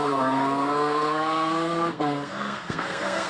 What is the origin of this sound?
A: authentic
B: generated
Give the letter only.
B